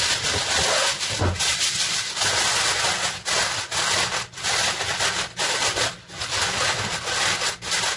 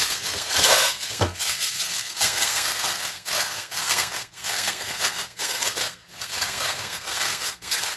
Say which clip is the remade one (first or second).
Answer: second